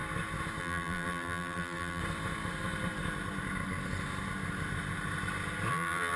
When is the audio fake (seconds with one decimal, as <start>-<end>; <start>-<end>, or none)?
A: 0.6-2.0; 5.7-6.2